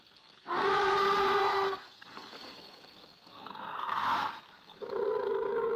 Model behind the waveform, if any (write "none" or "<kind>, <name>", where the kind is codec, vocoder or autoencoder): none